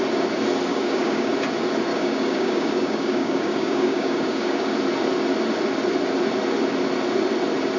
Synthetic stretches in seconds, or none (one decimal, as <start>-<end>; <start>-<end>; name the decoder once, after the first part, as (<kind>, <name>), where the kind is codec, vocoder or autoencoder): 0.7-1.3 (codec, DAC); 1.9-4.7